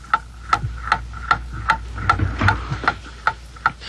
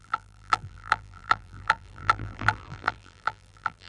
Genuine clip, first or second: first